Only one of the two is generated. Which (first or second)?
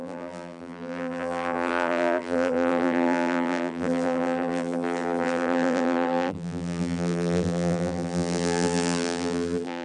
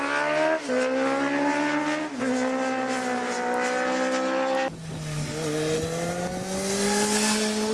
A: first